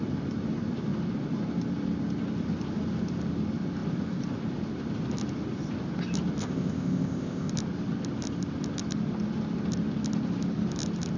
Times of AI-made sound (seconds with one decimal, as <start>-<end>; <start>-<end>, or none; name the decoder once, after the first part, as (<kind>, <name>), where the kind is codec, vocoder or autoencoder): 6.4-7.5 (codec, ZipCodec)